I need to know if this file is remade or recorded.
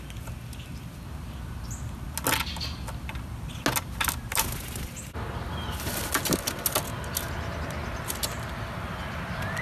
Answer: recorded